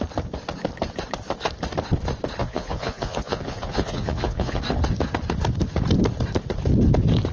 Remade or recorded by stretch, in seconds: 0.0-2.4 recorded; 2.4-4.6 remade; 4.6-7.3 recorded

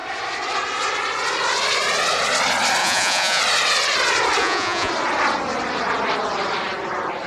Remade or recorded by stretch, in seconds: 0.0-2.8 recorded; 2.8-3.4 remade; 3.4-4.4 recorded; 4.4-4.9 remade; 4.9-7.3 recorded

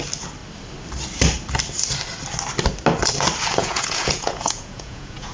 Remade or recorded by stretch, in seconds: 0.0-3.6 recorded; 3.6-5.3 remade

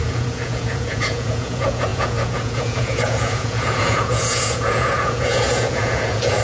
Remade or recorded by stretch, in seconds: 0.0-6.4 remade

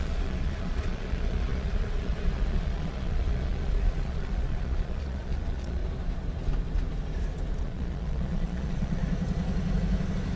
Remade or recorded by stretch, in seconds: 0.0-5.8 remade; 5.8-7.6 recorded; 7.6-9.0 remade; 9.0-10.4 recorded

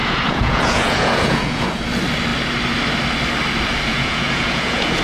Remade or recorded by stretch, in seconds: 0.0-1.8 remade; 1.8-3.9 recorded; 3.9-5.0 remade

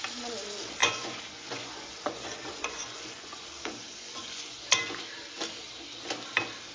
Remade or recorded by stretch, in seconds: 0.0-0.8 recorded; 0.8-4.8 remade; 4.8-6.7 recorded

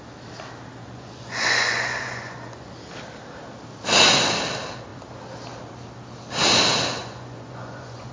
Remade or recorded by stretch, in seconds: 0.0-0.8 recorded; 0.8-2.7 remade; 2.7-7.0 recorded; 7.0-8.1 remade